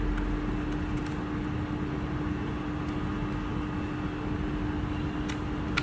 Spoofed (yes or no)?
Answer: no